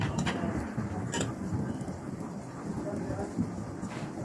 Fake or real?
fake